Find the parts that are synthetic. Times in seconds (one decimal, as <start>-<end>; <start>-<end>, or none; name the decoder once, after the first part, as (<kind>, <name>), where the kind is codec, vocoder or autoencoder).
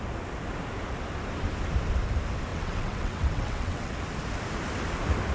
2.5-3.9 (vocoder, WaveNeXt)